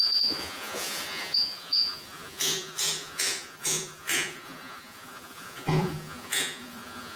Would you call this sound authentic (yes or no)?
no